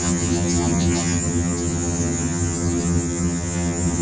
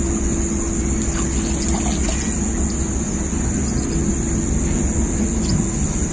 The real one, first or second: second